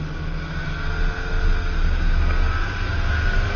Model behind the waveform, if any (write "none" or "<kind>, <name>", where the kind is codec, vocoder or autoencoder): none